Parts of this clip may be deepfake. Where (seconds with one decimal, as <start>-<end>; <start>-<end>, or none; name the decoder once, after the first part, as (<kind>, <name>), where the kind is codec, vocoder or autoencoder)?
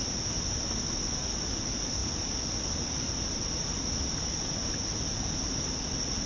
none